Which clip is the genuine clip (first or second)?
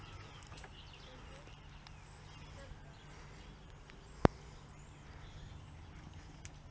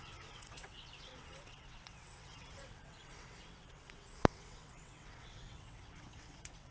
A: first